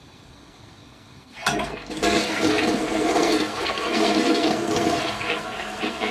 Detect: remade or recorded remade